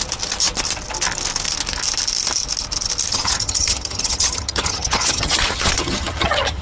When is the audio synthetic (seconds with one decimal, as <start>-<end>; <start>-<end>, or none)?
3.1-6.6